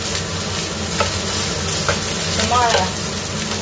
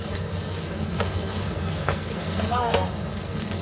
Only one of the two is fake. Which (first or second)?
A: second